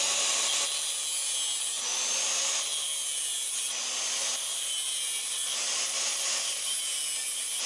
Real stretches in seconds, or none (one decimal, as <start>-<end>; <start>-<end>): 0.0-7.7